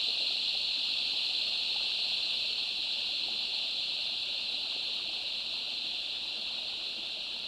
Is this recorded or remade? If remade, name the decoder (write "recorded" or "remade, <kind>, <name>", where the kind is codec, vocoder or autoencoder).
recorded